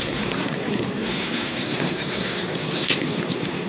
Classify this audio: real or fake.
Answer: fake